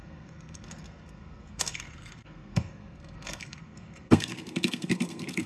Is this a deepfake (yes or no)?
yes